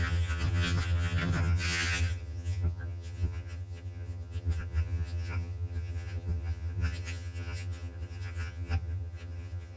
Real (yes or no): no